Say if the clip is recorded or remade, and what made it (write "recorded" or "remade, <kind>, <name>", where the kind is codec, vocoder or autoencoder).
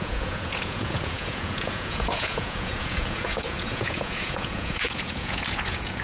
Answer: remade, vocoder, Vocos